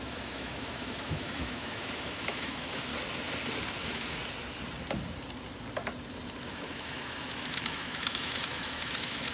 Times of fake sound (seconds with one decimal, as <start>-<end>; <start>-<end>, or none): 0.0-2.9; 3.8-4.2; 6.5-9.3